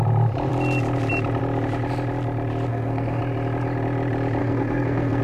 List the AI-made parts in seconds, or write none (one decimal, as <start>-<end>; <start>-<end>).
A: 2.7-3.2; 4.4-5.2